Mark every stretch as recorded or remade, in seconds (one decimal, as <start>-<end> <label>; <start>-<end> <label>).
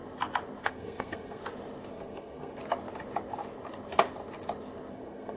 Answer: 0.0-0.6 recorded; 0.6-1.4 remade; 1.4-1.9 recorded; 1.9-2.6 remade; 2.6-4.9 recorded; 4.9-5.4 remade